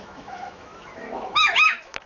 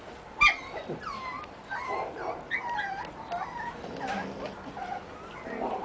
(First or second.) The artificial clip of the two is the first